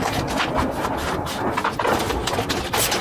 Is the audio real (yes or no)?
yes